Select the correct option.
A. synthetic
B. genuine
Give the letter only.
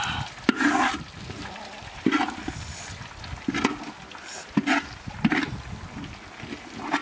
B